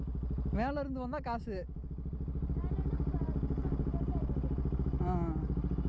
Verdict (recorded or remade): recorded